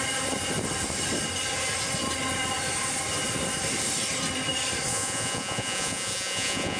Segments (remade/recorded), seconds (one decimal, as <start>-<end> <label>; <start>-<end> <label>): 0.0-4.9 recorded; 4.9-6.8 remade

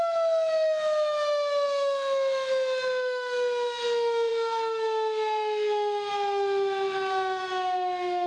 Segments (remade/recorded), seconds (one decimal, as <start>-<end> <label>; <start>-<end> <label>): 0.0-8.3 remade

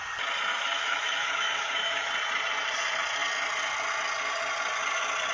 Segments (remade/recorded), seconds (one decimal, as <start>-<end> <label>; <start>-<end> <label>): 0.0-0.5 recorded; 0.5-2.1 remade; 2.1-5.3 recorded

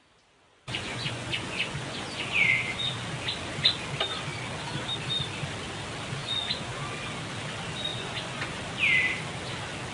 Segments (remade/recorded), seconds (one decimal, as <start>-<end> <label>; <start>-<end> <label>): 0.0-0.5 recorded; 0.5-2.9 remade; 2.9-6.2 recorded; 6.2-6.8 remade; 6.8-7.9 recorded; 7.9-8.6 remade; 8.6-9.9 recorded